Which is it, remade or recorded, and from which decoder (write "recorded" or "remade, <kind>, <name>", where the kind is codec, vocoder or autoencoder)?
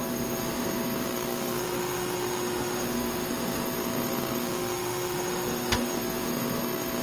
remade, autoencoder, DAC-VAE